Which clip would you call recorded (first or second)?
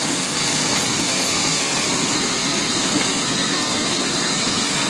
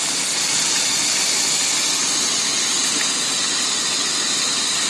second